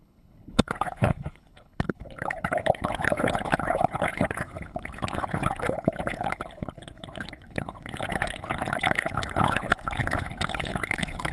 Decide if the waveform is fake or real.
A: fake